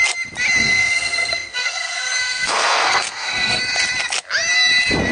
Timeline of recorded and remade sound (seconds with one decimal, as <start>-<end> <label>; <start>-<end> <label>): 0.0-0.6 recorded; 0.6-3.6 remade; 3.6-5.1 recorded